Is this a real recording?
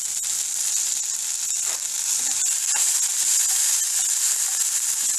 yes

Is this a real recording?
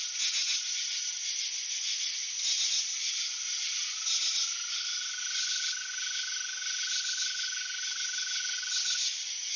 yes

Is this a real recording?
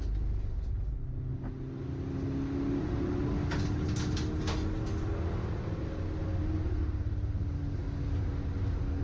yes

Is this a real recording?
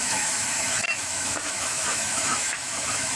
no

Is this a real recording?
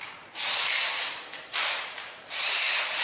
no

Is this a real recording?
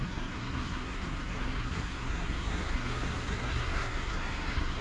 no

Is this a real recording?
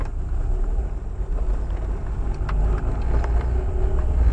yes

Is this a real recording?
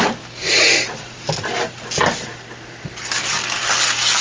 yes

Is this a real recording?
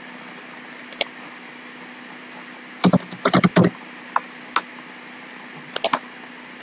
yes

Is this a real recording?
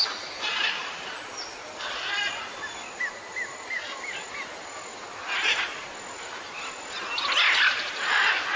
yes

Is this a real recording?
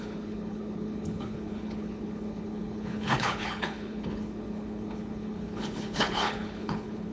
no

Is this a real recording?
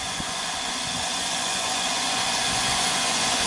no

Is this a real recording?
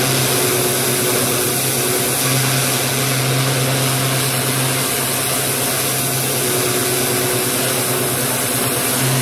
yes